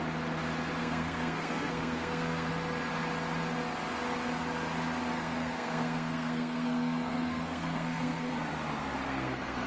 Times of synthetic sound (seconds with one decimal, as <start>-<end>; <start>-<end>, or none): 0.8-2.5; 5.1-8.3; 9.1-9.7